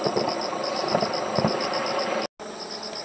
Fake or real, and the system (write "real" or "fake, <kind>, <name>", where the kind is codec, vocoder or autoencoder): real